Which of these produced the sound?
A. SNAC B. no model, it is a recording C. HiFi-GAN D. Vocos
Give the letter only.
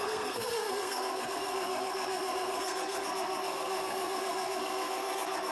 A